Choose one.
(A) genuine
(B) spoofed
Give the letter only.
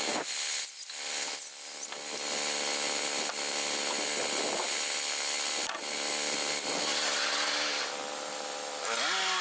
A